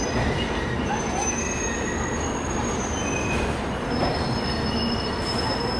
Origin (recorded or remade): recorded